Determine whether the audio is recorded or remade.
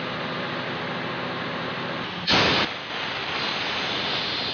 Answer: recorded